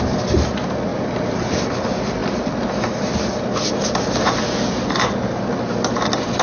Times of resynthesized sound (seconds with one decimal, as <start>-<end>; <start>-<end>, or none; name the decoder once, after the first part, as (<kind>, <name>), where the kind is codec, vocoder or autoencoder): 0.9-1.6 (vocoder, BigVGAN v2); 2.2-5.7